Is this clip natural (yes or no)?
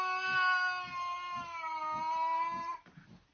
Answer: yes